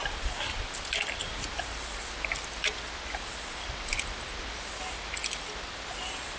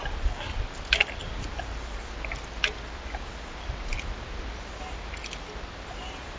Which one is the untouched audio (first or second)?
second